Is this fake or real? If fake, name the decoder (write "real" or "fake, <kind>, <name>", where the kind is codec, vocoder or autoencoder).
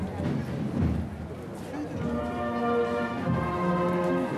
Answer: real